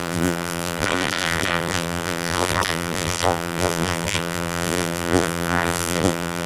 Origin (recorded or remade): remade